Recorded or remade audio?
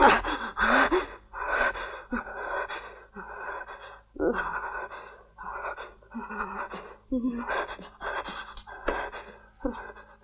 recorded